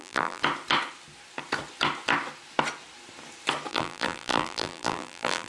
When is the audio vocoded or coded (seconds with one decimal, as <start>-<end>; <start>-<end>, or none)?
0.0-0.4; 3.7-5.5

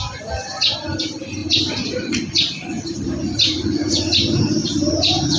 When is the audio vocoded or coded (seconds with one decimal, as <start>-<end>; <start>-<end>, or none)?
1.4-2.1; 4.6-5.4